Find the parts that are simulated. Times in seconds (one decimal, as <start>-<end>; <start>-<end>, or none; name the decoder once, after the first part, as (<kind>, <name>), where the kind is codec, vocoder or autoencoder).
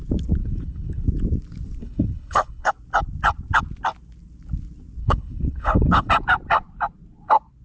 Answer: 0.4-1.1 (codec, HILCodec); 1.8-2.7; 5.0-6.1